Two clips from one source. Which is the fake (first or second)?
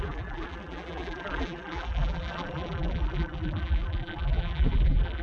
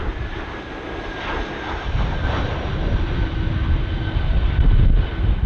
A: first